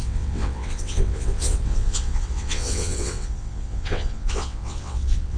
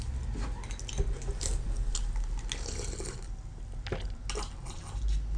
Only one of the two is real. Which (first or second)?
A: second